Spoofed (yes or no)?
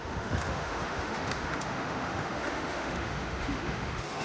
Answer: yes